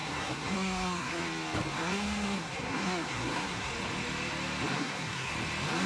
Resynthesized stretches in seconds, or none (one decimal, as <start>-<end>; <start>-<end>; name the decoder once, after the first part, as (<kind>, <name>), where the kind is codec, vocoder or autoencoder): 0.0-1.2 (codec, SNAC); 1.8-3.7; 4.7-5.3